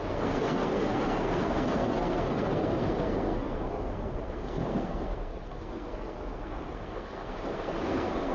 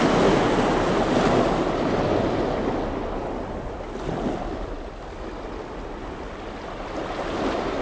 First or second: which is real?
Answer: second